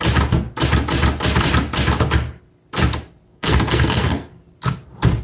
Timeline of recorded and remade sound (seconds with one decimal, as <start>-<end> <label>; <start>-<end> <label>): 0.0-3.3 recorded; 3.3-4.4 remade; 4.4-5.2 recorded